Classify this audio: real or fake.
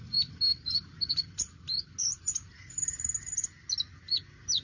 real